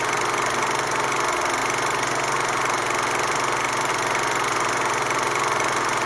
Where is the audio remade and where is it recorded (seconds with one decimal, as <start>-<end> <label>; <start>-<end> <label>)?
0.0-6.1 recorded